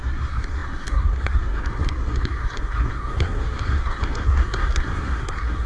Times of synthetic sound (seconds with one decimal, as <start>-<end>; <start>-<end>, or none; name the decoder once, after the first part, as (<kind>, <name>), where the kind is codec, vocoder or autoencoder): 0.0-5.7 (codec, SNAC)

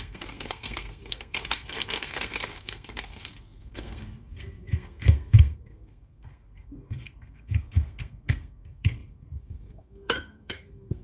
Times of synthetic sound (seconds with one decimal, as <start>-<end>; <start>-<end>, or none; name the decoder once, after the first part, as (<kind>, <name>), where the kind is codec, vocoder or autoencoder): 0.0-11.0 (codec, SNAC)

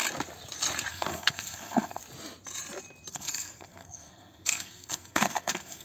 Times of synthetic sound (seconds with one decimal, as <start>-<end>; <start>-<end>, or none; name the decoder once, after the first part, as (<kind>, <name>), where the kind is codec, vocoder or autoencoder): 0.9-2.0 (codec, SNAC); 3.1-5.8